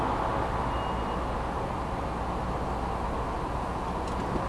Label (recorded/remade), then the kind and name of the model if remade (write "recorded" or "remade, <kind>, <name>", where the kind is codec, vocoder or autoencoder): recorded